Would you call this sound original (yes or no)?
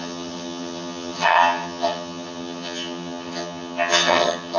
no